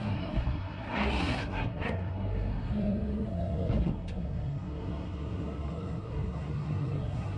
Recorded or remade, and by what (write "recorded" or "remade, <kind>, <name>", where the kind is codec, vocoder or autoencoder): remade, codec, SNAC